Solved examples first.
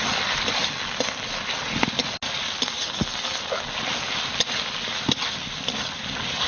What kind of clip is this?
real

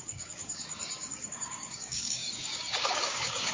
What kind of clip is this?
fake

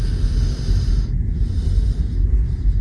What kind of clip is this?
real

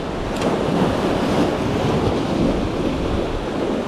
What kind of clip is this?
real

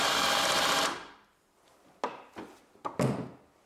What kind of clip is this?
real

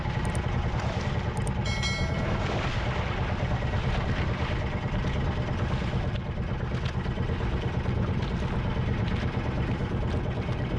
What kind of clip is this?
real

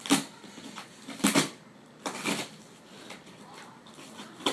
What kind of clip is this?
real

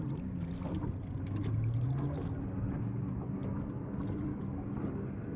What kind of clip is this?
real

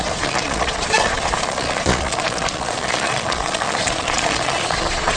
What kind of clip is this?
fake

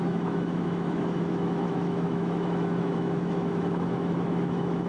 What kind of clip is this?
fake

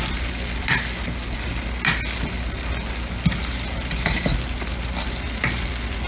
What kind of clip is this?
real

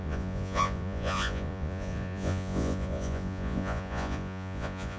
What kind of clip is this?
fake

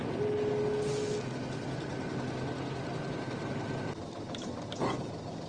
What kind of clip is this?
real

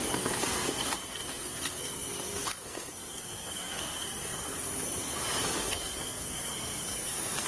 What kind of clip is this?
fake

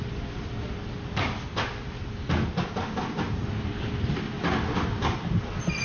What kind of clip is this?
real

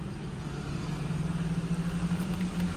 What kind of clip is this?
fake